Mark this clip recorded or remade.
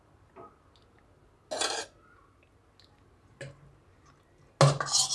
recorded